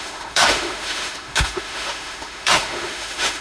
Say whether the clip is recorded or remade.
remade